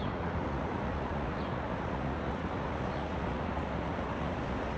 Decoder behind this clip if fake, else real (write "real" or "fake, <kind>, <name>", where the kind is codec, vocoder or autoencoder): fake, vocoder, Vocos